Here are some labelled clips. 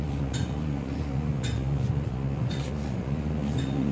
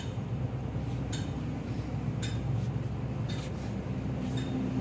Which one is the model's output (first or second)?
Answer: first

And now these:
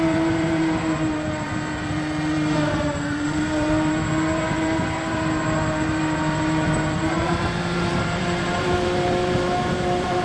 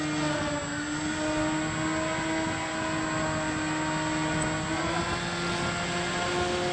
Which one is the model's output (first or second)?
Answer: first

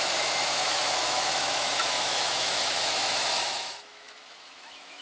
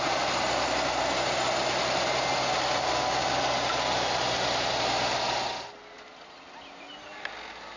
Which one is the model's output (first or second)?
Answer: first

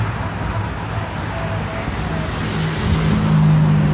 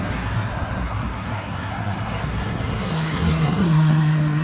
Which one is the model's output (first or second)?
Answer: second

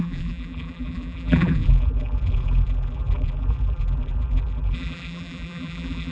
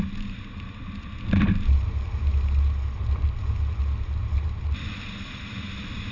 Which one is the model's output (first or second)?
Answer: first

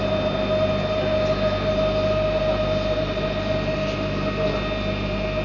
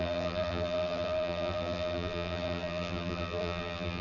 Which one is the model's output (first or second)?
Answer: second